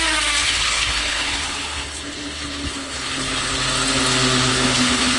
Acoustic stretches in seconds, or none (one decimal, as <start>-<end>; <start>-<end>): 0.0-0.4; 3.5-4.5